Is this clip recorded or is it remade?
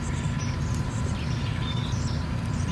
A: remade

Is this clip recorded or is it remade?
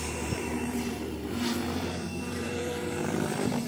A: remade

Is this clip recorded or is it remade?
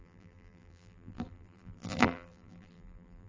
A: remade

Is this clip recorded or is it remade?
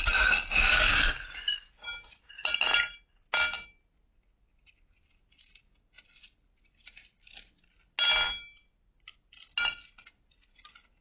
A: recorded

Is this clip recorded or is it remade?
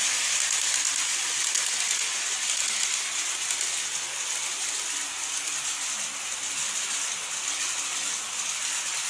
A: recorded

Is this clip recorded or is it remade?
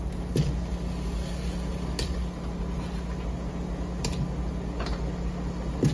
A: recorded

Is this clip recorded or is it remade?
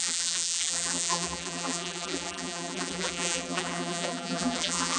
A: remade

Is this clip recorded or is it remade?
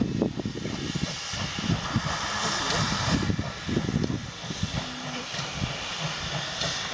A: recorded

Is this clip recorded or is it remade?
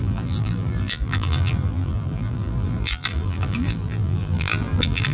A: remade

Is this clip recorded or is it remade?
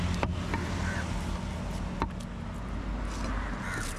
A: recorded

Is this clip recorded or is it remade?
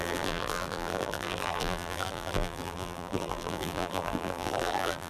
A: remade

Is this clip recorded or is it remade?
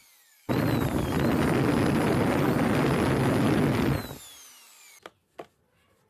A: recorded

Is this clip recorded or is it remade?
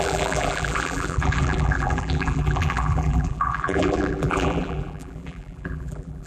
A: remade